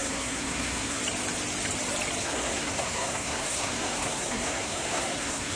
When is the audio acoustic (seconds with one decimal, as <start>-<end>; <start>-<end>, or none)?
1.0-2.2